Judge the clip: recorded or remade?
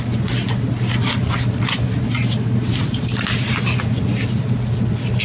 recorded